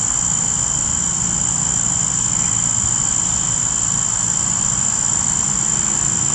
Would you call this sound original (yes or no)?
yes